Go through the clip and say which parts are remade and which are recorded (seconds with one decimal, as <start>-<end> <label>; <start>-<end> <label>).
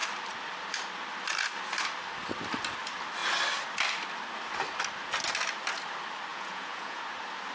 0.0-6.3 recorded; 6.3-7.0 remade; 7.0-7.5 recorded